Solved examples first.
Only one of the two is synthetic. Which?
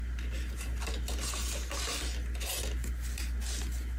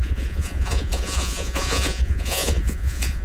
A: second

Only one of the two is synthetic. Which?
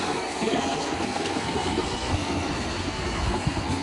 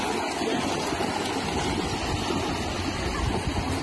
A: first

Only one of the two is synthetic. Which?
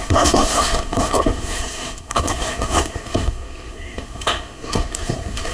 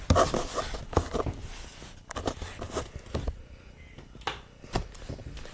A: first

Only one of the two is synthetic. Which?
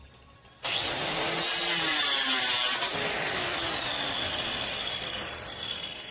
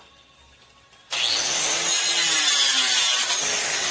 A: first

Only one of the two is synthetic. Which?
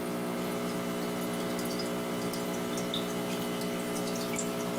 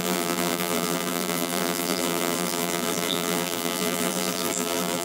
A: second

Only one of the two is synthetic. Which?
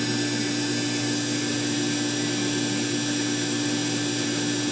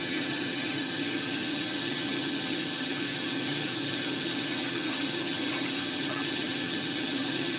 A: second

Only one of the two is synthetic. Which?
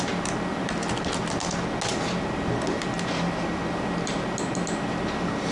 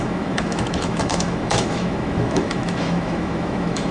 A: second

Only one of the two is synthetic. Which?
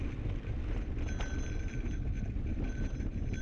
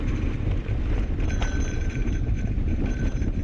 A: second